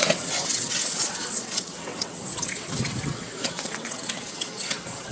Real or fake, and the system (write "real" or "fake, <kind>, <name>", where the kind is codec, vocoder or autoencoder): fake, vocoder, WaveNeXt